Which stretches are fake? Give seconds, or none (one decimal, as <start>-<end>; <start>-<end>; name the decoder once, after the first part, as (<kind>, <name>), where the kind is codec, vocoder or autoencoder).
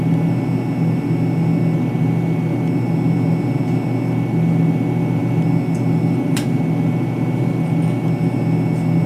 none